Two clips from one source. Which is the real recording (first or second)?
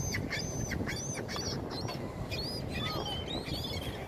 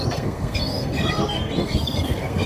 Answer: first